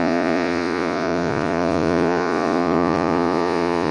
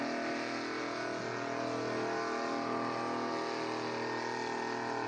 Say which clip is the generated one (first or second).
first